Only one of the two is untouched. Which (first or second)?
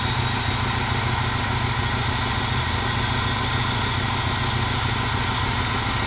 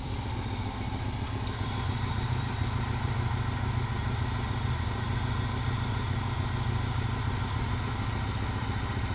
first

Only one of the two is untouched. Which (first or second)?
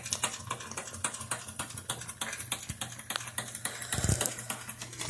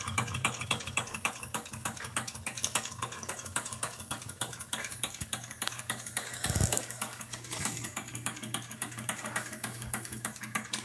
first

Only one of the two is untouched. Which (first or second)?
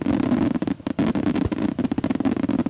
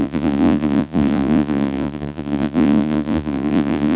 first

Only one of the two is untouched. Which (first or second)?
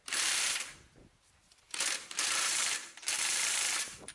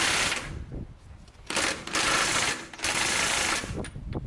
second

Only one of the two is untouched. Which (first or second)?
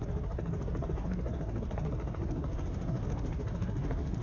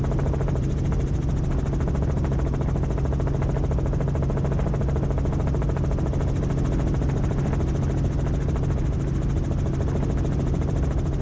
second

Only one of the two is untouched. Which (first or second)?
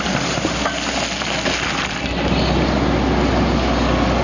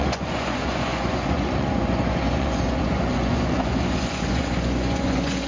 first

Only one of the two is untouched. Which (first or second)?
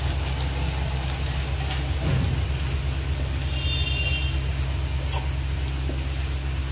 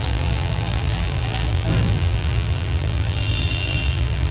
first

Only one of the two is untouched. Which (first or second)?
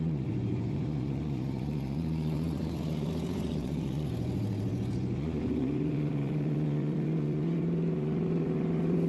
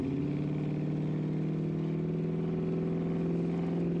second